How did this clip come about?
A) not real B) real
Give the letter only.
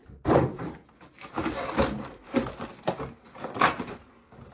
B